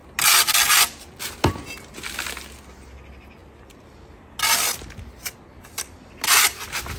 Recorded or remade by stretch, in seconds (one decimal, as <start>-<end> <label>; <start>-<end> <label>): 0.0-7.0 recorded